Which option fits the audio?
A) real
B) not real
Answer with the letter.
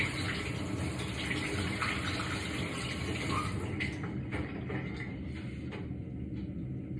A